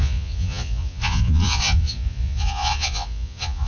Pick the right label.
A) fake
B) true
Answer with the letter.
A